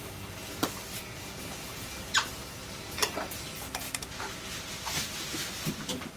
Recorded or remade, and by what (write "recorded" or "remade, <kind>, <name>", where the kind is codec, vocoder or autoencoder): recorded